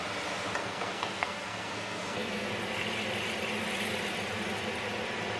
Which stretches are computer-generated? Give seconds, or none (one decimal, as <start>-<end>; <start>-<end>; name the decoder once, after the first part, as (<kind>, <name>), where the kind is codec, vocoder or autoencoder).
0.6-2.5 (codec, SNAC)